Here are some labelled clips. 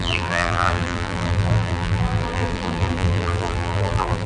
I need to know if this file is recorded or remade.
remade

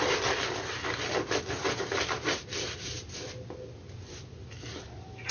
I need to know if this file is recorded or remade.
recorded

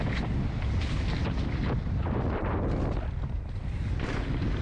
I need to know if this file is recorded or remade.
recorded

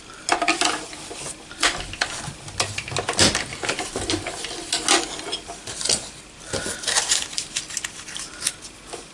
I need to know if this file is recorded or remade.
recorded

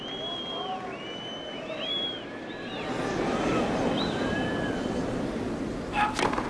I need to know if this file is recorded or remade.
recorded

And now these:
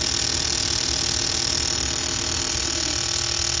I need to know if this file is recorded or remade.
recorded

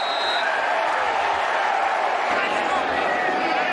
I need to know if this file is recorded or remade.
recorded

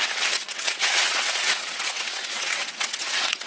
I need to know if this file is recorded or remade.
remade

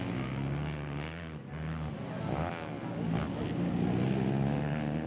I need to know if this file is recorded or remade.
recorded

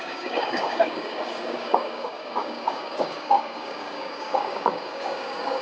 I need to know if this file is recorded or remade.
remade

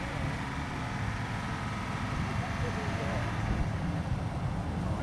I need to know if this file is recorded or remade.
recorded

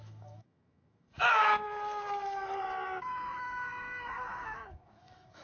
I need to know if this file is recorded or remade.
remade